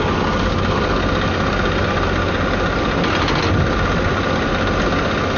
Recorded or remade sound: recorded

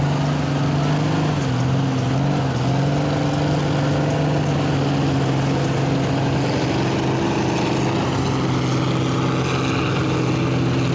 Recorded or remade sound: recorded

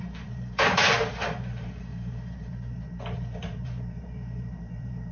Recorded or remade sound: remade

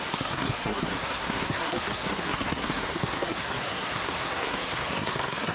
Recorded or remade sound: remade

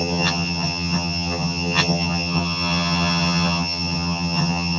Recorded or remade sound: remade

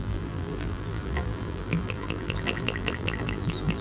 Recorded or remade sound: remade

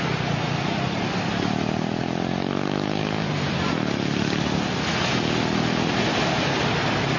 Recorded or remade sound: recorded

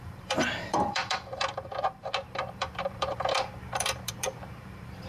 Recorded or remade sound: remade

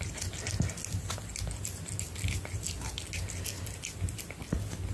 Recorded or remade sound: recorded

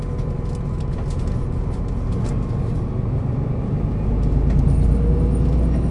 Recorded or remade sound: recorded